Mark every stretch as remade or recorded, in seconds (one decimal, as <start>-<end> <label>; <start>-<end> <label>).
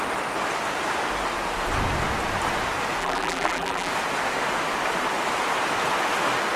0.0-3.0 recorded; 3.0-3.9 remade; 3.9-6.6 recorded